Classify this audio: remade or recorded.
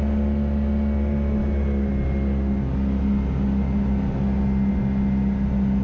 recorded